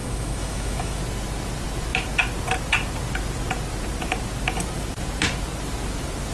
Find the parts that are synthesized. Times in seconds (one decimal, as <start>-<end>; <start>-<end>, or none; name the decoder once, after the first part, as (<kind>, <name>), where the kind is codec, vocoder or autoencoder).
0.0-1.0 (autoencoder, DAC-VAE)

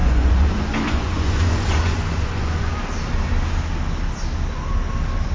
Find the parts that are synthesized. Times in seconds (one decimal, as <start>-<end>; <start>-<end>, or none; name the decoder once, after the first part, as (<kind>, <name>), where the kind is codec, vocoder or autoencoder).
0.0-2.7 (vocoder, Vocos)